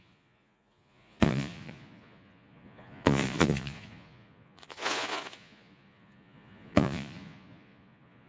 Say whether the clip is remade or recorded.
remade